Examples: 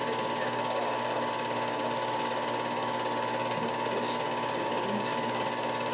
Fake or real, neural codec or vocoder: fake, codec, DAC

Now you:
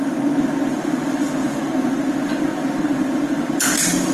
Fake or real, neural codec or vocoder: fake, vocoder, BigVGAN v2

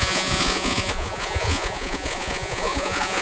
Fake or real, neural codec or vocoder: fake, vocoder, Vocos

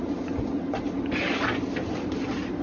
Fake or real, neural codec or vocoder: real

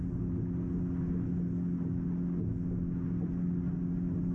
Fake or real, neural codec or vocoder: real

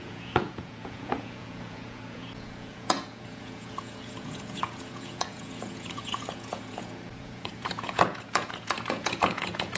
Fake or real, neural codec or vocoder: fake, vocoder, Vocos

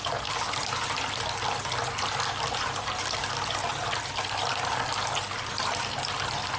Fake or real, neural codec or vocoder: real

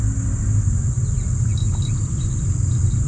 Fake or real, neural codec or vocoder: real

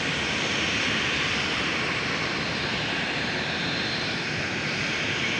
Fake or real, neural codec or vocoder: fake, vocoder, BigVGAN v2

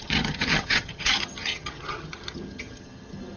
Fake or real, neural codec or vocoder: fake, vocoder, HiFi-GAN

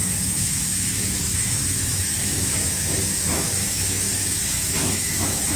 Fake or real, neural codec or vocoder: fake, autoencoder, DAC-VAE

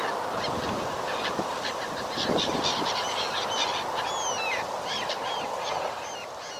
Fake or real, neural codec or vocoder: real